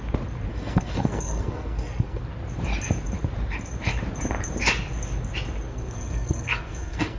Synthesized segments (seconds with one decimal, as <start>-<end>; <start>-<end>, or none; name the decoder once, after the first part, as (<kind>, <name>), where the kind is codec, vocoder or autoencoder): 0.5-2.2 (codec, SNAC); 5.7-7.2